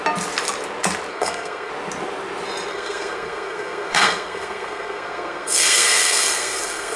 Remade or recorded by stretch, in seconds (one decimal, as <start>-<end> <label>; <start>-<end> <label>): 0.0-1.1 recorded; 1.1-1.7 remade; 1.7-2.7 recorded; 2.7-7.0 remade